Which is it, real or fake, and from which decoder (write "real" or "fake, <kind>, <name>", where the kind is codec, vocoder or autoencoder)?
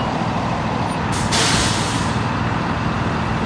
real